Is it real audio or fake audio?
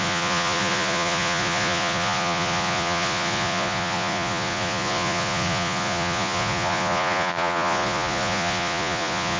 fake